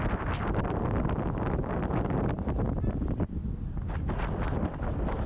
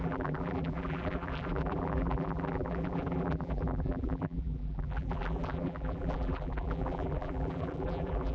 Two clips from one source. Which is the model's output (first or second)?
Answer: second